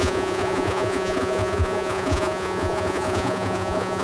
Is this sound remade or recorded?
remade